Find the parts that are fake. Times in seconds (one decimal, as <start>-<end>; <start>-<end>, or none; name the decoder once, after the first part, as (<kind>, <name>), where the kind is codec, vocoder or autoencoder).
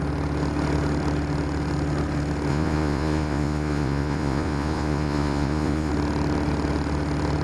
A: 2.5-5.9 (vocoder, Vocos)